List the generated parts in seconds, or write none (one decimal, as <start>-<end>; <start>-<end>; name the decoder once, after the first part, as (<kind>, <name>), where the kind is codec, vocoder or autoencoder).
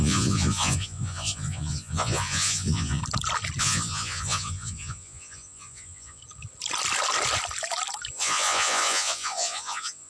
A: 0.0-3.0 (vocoder, Vocos); 3.6-6.2; 8.1-10.1